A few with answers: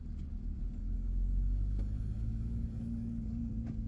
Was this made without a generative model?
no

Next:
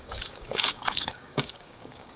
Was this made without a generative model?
no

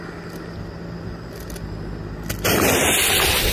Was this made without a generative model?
yes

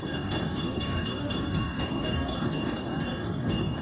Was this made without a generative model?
no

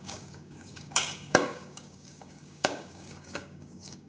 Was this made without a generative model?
no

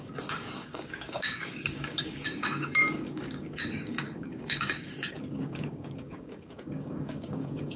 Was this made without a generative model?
no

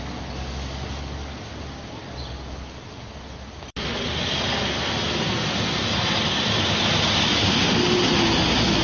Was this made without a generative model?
yes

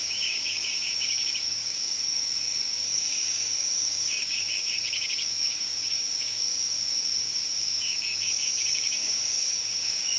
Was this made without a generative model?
no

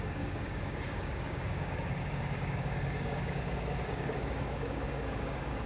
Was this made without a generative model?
no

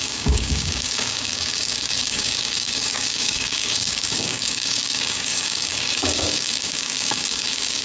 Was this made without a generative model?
no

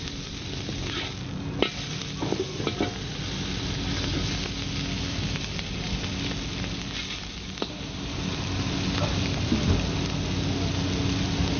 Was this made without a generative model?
yes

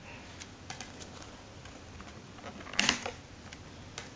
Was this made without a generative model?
yes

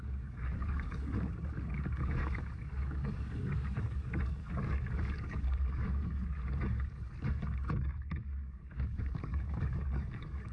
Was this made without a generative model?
no